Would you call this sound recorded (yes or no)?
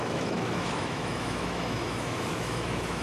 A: no